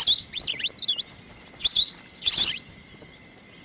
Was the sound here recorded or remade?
recorded